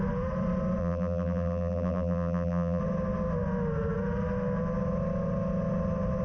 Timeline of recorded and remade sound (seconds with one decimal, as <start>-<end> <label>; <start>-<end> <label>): 0.0-0.8 recorded; 0.8-2.8 remade; 2.8-6.2 recorded